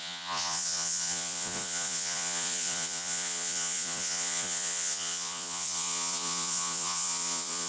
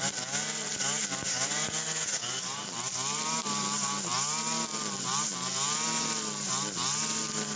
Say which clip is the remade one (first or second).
first